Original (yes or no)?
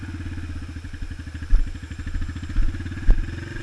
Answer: yes